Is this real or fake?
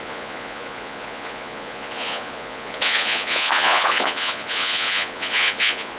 fake